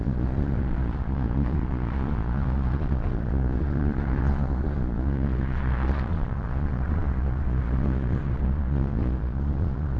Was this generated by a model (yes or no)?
yes